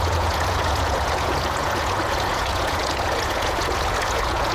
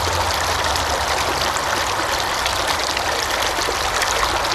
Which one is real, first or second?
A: second